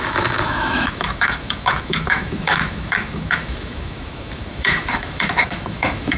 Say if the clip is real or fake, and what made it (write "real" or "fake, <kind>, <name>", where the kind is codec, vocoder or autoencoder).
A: fake, autoencoder, DAC-VAE